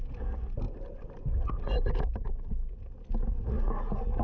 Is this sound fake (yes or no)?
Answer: no